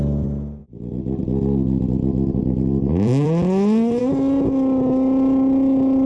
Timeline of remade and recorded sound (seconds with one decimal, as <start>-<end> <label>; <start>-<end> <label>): 0.0-2.4 recorded; 2.4-4.0 remade; 4.0-6.1 recorded

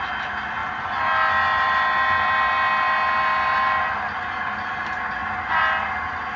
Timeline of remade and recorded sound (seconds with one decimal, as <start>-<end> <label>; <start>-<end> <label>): 0.0-6.4 recorded

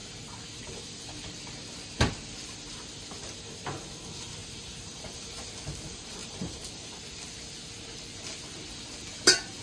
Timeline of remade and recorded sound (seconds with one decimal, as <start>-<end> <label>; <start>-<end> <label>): 0.0-4.4 recorded; 4.4-5.5 remade; 5.5-6.2 recorded; 6.2-6.7 remade; 6.7-9.6 recorded

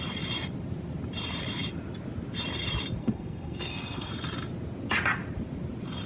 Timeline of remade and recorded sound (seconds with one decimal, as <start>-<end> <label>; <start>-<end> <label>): 0.0-3.0 recorded; 3.0-4.1 remade; 4.1-6.1 recorded

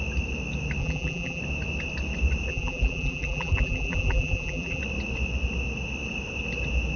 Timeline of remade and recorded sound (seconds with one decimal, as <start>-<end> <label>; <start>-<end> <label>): 0.0-0.8 recorded; 0.8-1.4 remade; 1.4-2.5 recorded; 2.5-4.8 remade; 4.8-7.0 recorded

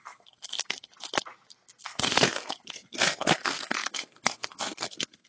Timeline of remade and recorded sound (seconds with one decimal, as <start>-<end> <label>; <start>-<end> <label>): 0.0-0.9 remade; 0.9-1.8 recorded; 1.8-5.3 remade

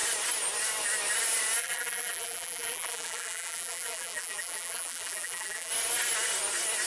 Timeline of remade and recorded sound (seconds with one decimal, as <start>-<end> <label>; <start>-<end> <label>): 0.0-1.6 recorded; 1.6-5.7 remade; 5.7-6.9 recorded

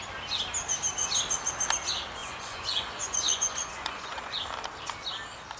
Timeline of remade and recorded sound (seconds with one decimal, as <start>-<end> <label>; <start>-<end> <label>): 0.0-2.2 recorded; 2.2-4.4 remade; 4.4-5.6 recorded